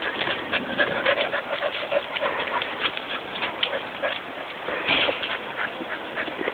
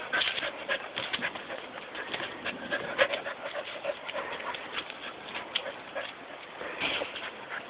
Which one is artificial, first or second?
first